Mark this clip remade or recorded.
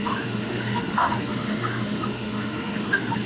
remade